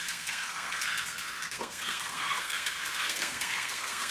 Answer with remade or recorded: remade